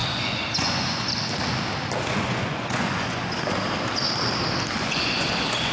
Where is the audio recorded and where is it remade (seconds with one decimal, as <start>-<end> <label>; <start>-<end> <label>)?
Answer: 0.0-1.1 remade; 1.1-2.0 recorded; 2.0-3.3 remade; 3.3-4.8 recorded; 4.8-5.7 remade